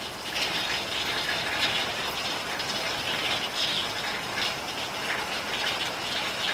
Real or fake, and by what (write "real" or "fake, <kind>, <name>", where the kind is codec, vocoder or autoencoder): real